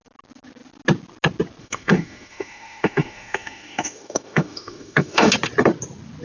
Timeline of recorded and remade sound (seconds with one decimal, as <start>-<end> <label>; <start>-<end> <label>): 0.0-1.6 recorded; 1.6-5.3 remade; 5.3-6.2 recorded